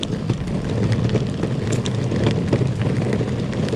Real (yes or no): yes